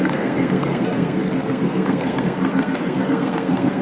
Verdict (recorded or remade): remade